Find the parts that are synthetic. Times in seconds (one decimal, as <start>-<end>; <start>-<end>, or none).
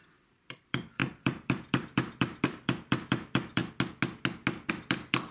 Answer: 0.0-3.6; 4.7-5.3